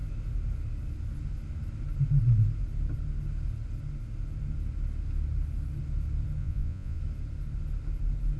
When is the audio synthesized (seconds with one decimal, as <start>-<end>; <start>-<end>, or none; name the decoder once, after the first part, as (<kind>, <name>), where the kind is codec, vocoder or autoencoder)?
6.4-7.0 (vocoder, Vocos)